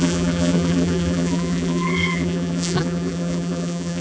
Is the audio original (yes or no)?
no